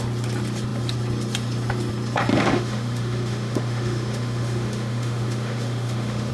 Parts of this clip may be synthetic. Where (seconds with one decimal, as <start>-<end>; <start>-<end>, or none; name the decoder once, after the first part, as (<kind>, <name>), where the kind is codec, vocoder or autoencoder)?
2.3-6.3 (autoencoder, DAC-VAE)